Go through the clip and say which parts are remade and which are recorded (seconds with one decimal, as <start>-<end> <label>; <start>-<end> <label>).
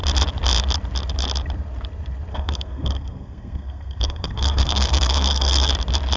0.0-2.3 recorded; 2.3-5.7 remade; 5.7-6.2 recorded